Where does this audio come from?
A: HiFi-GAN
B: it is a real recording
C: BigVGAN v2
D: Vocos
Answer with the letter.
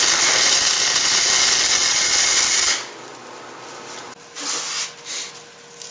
B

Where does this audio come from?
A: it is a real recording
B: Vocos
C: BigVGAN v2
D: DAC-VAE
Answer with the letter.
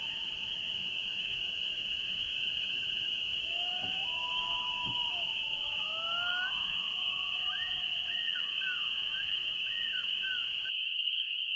D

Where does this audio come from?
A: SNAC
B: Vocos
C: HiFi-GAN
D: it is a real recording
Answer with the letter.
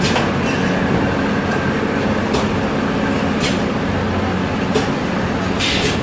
D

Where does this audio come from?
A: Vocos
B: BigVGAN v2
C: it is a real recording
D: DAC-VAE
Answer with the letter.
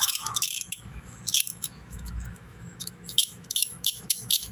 D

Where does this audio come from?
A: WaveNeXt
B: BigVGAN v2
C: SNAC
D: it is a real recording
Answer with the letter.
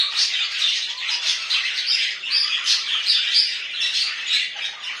D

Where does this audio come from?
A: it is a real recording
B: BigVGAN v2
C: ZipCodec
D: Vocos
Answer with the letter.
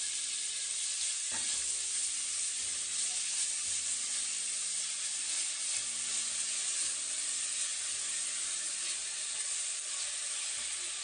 A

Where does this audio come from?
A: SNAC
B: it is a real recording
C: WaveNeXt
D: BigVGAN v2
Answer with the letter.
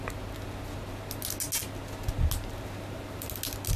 B